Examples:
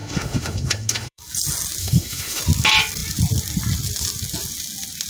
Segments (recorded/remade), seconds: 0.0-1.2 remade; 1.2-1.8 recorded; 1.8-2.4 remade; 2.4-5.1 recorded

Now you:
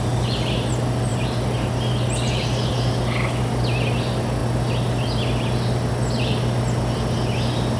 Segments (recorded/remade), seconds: 0.0-7.8 recorded

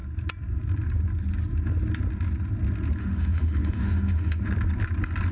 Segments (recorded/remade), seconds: 0.0-3.0 recorded; 3.0-4.4 remade; 4.4-5.3 recorded

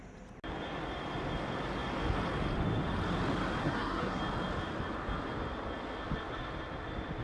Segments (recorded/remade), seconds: 0.0-3.6 recorded; 3.6-4.2 remade; 4.2-7.2 recorded